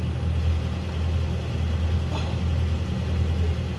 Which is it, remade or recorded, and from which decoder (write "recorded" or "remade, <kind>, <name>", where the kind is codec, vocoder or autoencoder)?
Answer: recorded